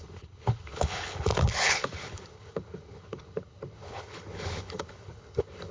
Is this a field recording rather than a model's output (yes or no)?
no